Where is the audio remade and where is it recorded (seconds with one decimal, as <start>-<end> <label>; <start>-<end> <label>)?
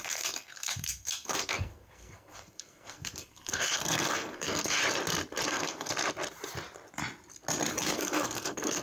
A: 0.0-4.8 remade; 4.8-5.5 recorded; 5.5-5.9 remade; 5.9-7.8 recorded; 7.8-8.8 remade